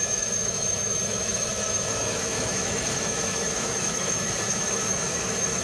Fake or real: fake